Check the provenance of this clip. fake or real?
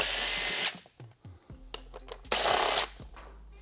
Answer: real